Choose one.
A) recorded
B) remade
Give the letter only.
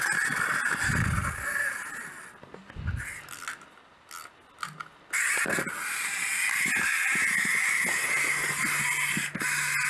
A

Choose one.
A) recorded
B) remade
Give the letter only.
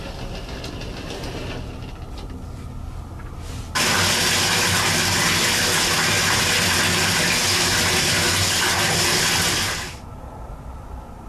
A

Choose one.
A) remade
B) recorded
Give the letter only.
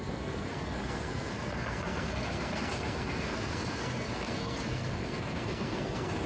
A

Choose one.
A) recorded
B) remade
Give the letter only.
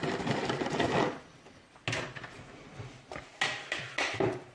A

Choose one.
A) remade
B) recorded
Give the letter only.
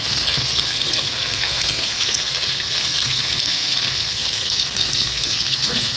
A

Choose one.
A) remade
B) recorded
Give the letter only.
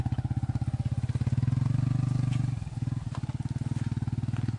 B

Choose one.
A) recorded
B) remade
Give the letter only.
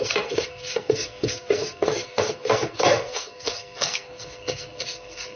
B